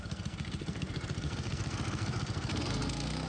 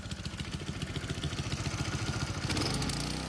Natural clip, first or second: second